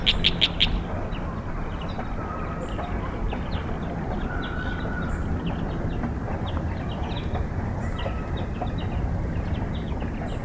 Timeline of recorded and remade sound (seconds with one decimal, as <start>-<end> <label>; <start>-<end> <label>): 0.0-10.4 recorded